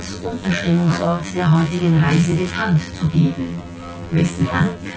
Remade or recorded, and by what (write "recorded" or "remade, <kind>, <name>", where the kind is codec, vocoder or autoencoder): remade, vocoder, BigVGAN v2